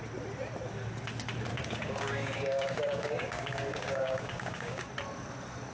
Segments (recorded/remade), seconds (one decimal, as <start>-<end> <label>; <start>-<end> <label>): 0.0-1.5 recorded; 1.5-4.9 remade; 4.9-5.7 recorded